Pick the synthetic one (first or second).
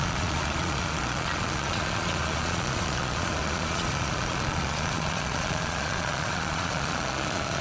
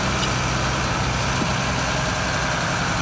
first